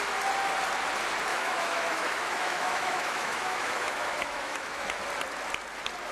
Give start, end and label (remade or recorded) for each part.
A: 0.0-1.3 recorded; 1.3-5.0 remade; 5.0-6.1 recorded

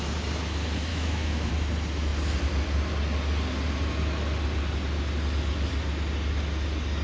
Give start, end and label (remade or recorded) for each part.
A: 0.0-0.9 recorded; 0.9-1.5 remade; 1.5-7.0 recorded

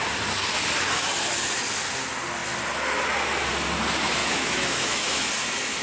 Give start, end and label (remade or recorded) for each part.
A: 0.0-4.2 recorded; 4.2-5.3 remade; 5.3-5.8 recorded

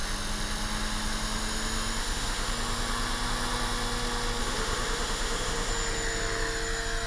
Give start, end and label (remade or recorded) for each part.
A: 0.0-2.0 recorded; 2.0-2.5 remade; 2.5-4.4 recorded; 4.4-5.7 remade; 5.7-7.1 recorded

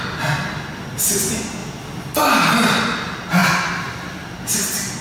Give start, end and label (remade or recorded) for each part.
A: 0.0-5.0 recorded